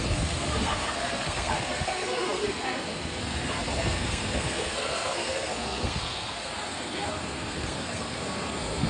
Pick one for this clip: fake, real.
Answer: fake